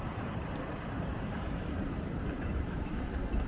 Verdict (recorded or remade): remade